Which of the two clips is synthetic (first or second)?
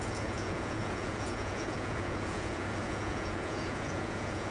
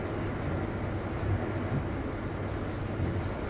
first